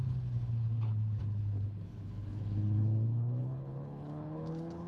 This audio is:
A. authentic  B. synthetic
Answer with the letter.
B